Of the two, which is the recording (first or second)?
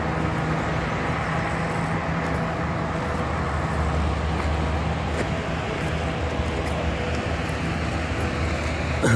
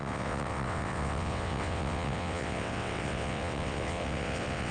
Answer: first